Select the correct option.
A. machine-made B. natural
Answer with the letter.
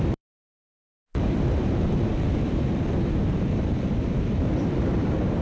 A